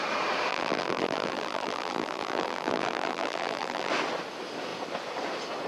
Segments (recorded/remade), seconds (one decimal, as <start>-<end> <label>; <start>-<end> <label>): 0.0-0.5 recorded; 0.5-3.9 remade; 3.9-5.7 recorded